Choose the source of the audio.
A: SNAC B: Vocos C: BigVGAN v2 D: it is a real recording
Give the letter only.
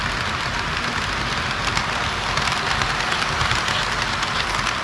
D